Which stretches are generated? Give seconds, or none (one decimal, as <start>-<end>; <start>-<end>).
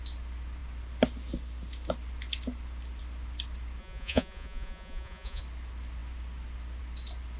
3.8-5.4